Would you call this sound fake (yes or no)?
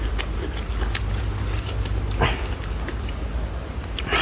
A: no